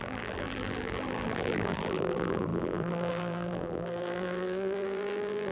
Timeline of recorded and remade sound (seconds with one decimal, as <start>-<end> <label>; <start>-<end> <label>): 0.0-5.5 remade